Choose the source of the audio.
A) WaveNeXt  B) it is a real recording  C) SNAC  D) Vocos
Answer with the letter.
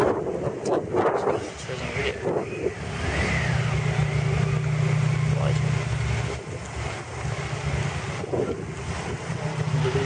B